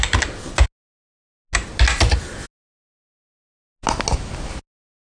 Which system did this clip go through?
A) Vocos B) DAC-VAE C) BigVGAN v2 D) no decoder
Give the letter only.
D